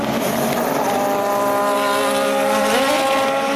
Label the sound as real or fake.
real